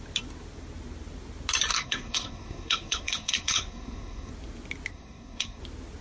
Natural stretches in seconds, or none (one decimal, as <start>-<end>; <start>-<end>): 0.0-1.7; 4.3-4.9; 5.6-6.0